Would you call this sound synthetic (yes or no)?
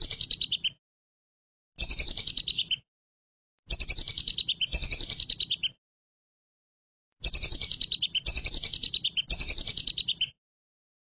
no